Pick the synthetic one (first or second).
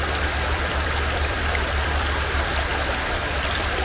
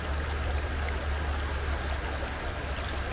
first